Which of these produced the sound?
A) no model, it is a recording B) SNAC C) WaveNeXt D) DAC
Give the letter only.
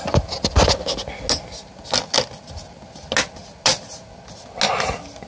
A